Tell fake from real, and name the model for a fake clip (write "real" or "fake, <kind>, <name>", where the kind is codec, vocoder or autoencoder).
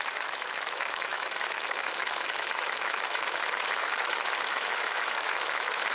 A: fake, autoencoder, DAC-VAE